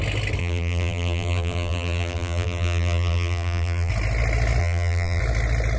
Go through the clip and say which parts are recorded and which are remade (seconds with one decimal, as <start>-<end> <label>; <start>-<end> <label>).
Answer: 0.0-0.4 recorded; 0.4-3.9 remade; 3.9-4.6 recorded; 4.6-5.2 remade; 5.2-5.8 recorded